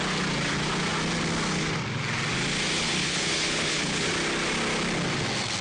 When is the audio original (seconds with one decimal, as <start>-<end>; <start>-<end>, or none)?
0.0-2.9; 4.1-5.6